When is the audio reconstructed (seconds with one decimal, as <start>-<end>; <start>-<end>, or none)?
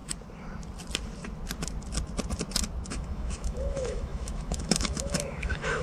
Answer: 2.9-5.8